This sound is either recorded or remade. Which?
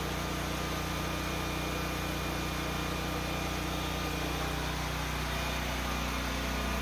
recorded